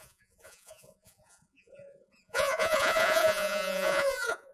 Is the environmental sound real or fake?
fake